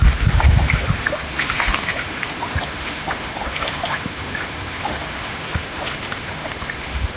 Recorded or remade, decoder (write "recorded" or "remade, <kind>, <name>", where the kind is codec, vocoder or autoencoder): remade, autoencoder, DAC-VAE